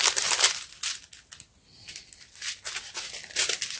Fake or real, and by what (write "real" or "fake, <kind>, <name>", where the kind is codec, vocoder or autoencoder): real